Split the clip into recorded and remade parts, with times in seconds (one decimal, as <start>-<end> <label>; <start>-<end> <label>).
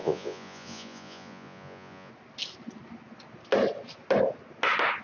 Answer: 0.0-2.1 remade; 2.1-5.0 recorded